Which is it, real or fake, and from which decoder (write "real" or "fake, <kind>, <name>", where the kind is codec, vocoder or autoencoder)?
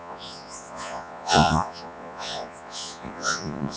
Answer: fake, vocoder, Vocos